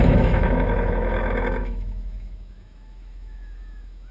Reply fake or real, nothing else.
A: fake